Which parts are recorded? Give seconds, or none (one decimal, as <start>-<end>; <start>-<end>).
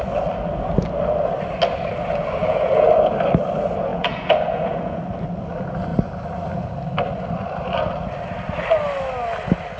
0.0-2.4; 2.9-3.9; 5.0-9.8